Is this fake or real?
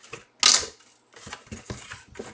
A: real